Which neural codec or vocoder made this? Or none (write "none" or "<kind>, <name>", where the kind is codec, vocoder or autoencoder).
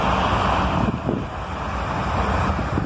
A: vocoder, BigVGAN v2